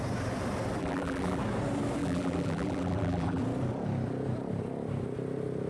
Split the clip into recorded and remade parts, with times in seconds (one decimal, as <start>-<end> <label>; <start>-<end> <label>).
0.0-0.8 recorded; 0.8-1.4 remade; 1.4-2.0 recorded; 2.0-3.4 remade; 3.4-5.7 recorded